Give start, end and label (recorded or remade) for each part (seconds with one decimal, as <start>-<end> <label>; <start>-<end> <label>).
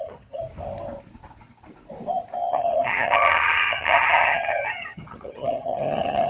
0.0-0.4 remade; 0.4-2.5 recorded; 2.5-6.3 remade